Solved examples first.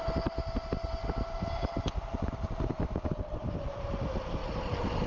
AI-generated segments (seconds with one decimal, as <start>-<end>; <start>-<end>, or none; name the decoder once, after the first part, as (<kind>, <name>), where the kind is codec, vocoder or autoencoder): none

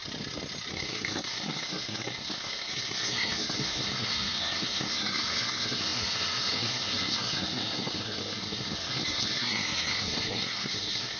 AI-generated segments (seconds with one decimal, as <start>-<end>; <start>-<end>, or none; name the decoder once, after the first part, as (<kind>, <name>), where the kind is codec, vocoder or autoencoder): 0.7-11.2 (codec, SNAC)

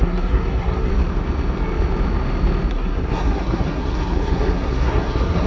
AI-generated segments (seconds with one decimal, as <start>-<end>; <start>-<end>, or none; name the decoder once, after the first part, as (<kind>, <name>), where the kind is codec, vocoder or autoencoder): 0.0-0.9 (codec, SNAC); 2.7-5.5

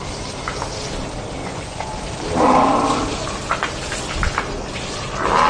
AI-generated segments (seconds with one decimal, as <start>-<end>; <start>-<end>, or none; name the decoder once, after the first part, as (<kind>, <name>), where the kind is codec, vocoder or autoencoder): 1.4-1.9 (vocoder, Vocos)